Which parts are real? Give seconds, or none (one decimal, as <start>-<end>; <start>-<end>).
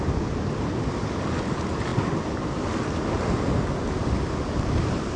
0.0-5.2